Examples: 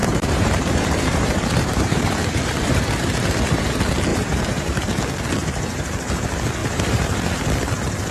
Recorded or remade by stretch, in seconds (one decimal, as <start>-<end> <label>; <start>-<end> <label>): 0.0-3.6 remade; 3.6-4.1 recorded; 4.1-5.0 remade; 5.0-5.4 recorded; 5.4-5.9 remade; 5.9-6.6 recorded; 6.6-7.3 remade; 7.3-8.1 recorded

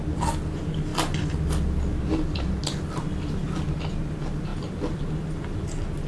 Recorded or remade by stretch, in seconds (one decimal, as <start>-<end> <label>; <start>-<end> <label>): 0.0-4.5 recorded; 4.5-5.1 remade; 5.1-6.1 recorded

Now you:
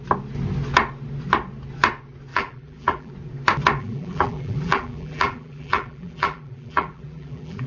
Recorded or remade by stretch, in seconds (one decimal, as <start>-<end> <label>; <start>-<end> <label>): 0.0-2.3 recorded; 2.3-3.1 remade; 3.1-3.8 recorded; 3.8-7.7 remade